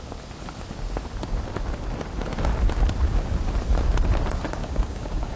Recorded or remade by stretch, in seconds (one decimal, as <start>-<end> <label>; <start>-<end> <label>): 0.0-4.6 recorded; 4.6-5.4 remade